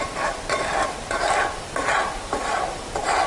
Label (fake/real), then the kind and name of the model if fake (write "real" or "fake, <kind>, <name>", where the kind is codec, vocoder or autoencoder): real